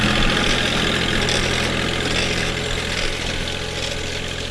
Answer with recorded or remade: recorded